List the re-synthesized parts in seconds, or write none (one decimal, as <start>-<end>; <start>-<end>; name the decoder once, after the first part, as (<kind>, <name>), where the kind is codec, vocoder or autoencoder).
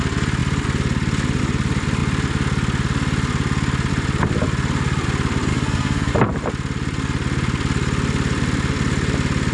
5.5-6.1 (codec, SNAC)